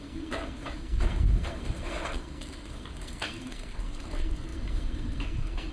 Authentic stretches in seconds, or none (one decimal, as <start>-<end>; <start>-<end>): none